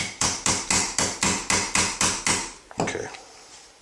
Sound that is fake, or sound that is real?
real